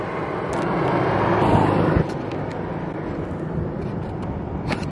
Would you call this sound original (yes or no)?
yes